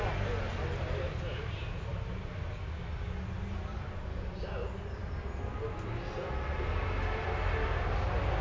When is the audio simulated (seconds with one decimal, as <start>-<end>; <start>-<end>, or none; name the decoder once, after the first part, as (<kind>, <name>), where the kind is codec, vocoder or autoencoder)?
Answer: none